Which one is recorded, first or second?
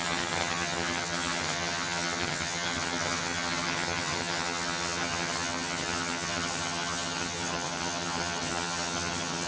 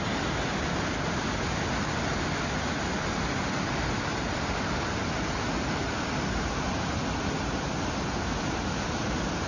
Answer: second